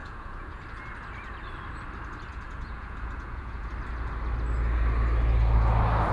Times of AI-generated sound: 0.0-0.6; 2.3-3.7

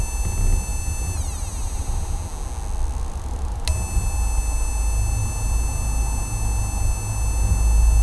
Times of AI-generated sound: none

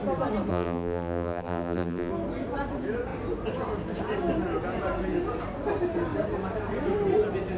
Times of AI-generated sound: 0.5-2.1